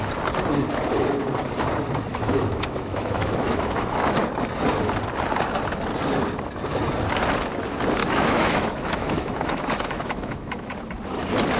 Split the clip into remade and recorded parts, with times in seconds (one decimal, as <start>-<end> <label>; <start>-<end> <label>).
0.0-2.1 recorded; 2.1-4.2 remade; 4.2-8.0 recorded; 8.0-10.7 remade; 10.7-11.6 recorded